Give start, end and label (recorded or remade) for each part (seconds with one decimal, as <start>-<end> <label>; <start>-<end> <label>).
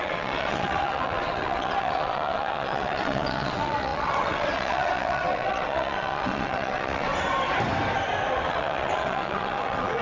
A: 0.0-7.1 remade; 7.1-8.3 recorded; 8.3-10.0 remade